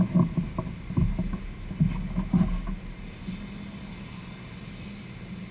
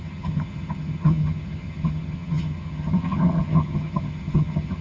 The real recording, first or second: first